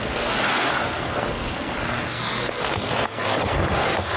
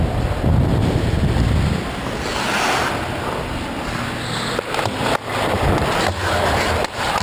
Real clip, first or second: second